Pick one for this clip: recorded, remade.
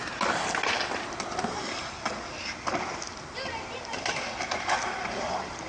recorded